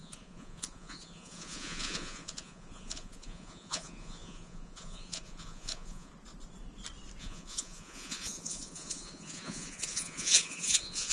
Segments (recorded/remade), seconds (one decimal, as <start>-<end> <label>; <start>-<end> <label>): 0.0-6.1 remade; 6.1-7.2 recorded; 7.2-11.1 remade